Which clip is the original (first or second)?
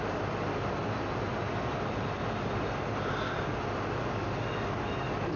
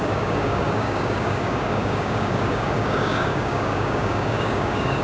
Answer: first